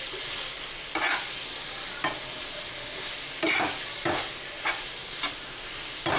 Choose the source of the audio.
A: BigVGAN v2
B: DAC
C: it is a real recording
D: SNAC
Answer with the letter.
C